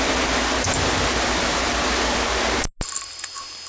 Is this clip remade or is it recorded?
recorded